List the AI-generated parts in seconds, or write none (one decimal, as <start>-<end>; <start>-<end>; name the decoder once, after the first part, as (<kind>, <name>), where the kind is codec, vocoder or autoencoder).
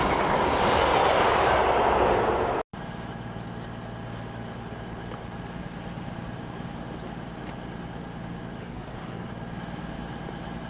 8.6-9.3 (codec, DAC)